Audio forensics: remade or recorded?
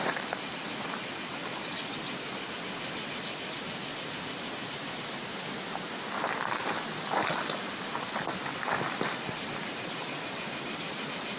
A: remade